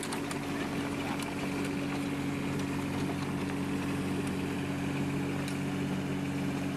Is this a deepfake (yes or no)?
no